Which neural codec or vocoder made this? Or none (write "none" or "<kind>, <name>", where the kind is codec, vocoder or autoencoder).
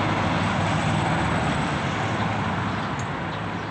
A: vocoder, BigVGAN v2